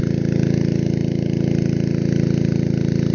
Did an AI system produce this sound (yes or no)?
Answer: no